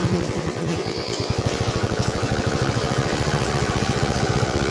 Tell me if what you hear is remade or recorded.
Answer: remade